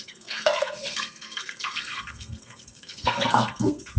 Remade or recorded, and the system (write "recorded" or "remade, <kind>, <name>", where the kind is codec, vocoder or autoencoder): remade, codec, SNAC